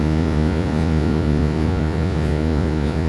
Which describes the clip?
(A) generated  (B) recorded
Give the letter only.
A